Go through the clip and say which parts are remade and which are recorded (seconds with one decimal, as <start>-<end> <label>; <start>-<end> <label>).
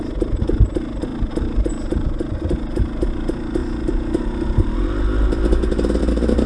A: 0.0-6.5 recorded